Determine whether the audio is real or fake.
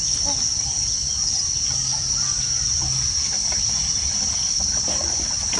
real